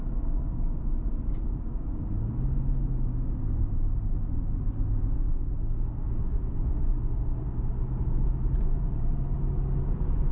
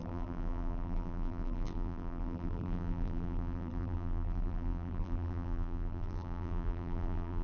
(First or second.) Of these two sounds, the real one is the first